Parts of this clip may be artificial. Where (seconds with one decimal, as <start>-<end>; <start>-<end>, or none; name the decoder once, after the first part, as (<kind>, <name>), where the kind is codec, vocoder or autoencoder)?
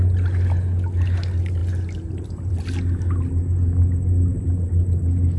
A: none